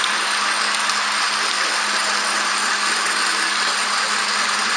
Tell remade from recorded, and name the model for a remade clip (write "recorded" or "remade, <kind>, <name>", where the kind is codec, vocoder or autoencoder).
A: recorded